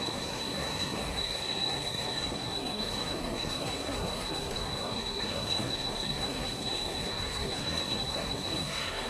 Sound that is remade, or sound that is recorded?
remade